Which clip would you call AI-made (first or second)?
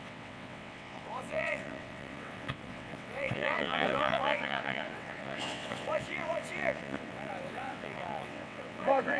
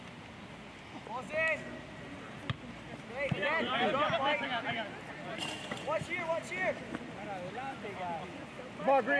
first